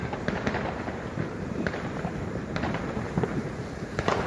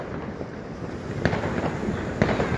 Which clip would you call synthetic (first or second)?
first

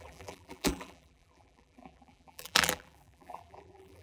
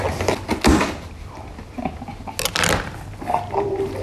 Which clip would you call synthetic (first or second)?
first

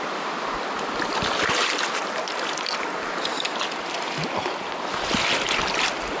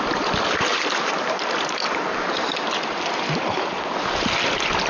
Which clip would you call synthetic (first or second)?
second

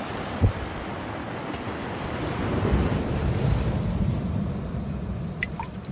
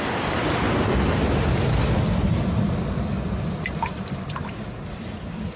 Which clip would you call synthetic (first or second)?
first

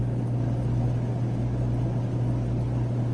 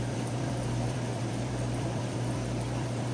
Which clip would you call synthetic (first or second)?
second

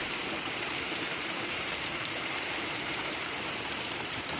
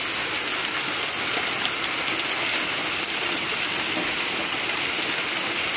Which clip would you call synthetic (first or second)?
first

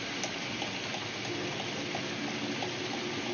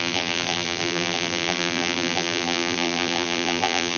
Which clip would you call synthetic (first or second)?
second